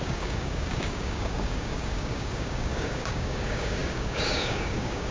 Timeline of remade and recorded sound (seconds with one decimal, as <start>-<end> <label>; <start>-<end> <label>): 0.0-5.1 remade